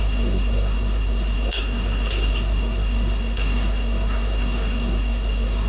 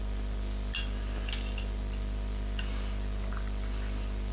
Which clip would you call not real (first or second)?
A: first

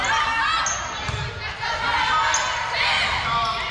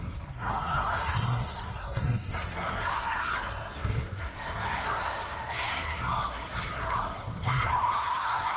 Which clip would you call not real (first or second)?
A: second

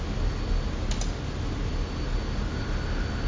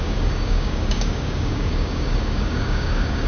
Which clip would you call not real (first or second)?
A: second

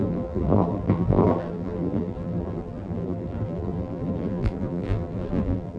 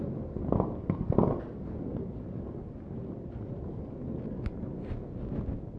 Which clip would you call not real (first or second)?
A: first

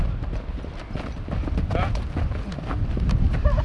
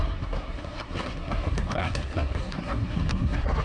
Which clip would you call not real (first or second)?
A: second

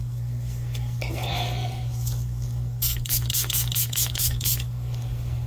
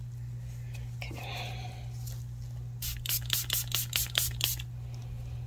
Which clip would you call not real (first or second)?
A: first